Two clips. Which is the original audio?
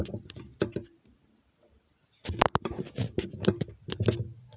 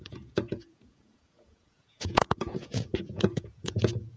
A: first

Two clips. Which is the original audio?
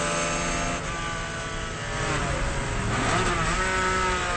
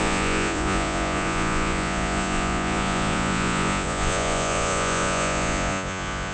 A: first